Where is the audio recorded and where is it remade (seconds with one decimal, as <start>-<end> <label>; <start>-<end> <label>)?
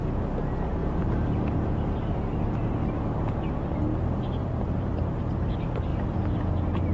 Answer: 0.0-0.8 recorded; 0.8-2.9 remade; 2.9-4.4 recorded; 4.4-5.2 remade; 5.2-6.9 recorded